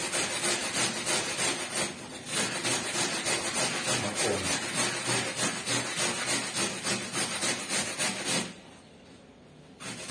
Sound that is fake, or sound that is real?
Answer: real